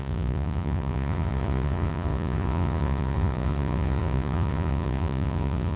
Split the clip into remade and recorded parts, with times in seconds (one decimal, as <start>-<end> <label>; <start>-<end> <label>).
0.0-5.8 remade